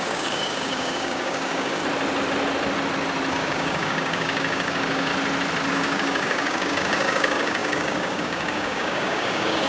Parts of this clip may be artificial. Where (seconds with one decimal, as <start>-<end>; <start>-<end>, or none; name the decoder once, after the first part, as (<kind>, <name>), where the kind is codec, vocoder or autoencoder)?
0.0-1.8 (codec, DAC); 3.3-5.1; 5.7-9.7